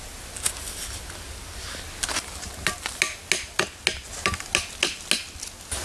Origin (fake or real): real